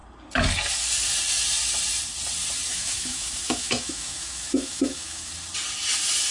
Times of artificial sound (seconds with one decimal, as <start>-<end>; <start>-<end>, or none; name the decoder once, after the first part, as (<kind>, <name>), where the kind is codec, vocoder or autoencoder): 2.7-5.3 (autoencoder, DAC-VAE)